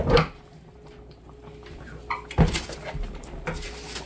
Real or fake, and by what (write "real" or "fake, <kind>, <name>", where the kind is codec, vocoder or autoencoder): real